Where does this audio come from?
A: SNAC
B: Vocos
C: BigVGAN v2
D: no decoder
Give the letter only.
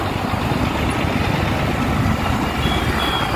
D